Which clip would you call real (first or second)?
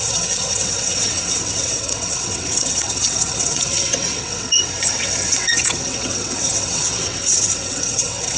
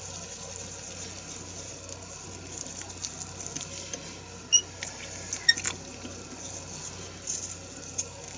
second